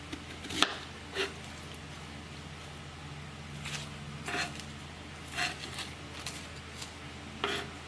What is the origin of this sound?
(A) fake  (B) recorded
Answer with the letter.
B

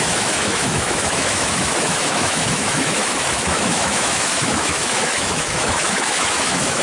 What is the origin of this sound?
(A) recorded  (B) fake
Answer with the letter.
B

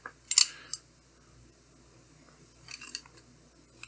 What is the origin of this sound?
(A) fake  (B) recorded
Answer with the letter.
B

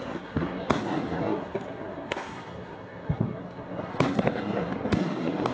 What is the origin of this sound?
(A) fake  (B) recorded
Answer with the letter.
A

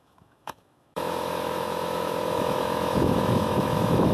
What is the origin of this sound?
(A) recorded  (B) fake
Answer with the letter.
B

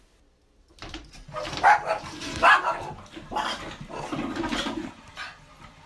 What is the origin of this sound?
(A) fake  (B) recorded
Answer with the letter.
B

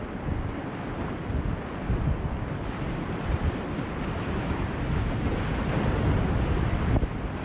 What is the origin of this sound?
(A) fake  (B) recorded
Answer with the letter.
B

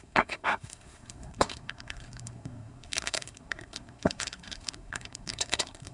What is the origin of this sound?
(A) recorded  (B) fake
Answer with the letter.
B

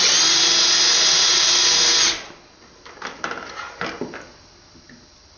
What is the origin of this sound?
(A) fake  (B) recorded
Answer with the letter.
B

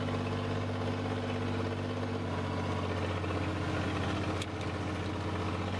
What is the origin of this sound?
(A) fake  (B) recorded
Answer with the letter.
B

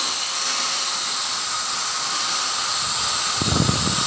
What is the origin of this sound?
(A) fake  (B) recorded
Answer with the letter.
B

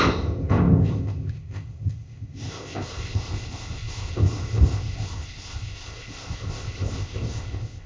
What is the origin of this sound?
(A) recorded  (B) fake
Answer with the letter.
B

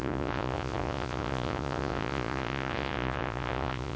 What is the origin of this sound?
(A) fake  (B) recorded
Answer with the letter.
A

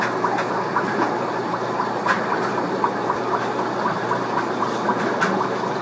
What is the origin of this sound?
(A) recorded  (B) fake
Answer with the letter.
A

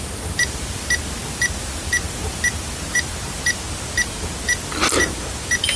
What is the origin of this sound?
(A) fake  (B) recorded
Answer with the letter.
B